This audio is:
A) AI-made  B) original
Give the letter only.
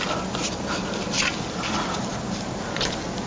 B